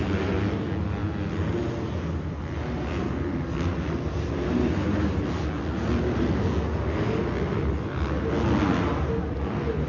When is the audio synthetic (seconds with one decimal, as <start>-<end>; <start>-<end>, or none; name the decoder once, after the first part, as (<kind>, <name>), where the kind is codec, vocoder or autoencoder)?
none